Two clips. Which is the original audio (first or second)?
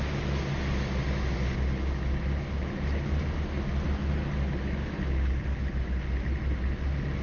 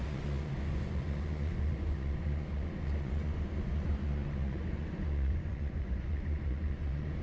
first